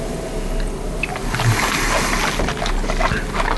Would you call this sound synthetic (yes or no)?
no